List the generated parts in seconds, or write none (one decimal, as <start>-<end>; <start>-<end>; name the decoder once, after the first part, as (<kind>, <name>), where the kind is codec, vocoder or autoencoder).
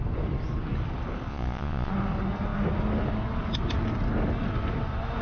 1.3-1.9 (vocoder, Vocos)